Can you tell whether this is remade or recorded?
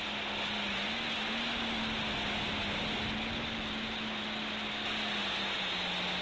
recorded